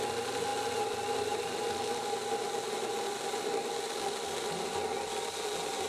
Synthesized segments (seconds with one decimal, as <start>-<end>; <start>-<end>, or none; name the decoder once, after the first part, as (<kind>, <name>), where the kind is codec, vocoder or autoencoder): none